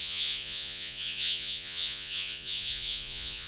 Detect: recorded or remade remade